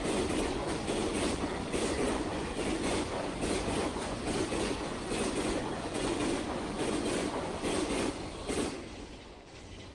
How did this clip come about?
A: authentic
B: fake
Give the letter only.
B